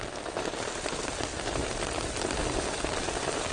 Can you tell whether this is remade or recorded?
recorded